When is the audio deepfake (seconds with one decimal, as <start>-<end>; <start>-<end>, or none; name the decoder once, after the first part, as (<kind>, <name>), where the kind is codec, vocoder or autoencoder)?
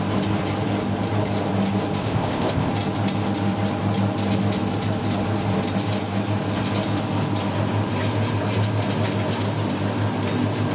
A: 2.0-2.7 (codec, ZipCodec)